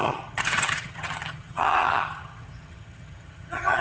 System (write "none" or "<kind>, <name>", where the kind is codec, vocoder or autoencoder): vocoder, HiFi-GAN